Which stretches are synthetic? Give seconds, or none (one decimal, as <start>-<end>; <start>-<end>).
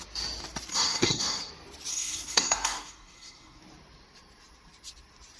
0.7-1.5; 1.9-3.6